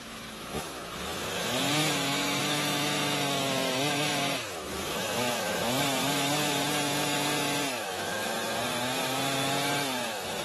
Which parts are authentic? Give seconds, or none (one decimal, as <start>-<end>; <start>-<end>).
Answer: 6.6-7.8